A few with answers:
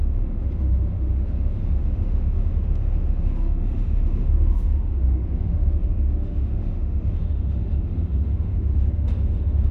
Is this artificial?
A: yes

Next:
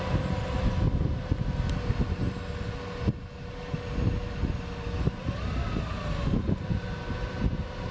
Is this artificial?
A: no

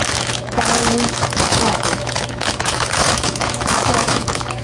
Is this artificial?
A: yes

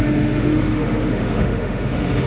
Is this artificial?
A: yes